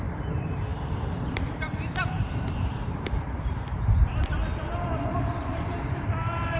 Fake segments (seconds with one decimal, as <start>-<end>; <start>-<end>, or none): 0.0-6.6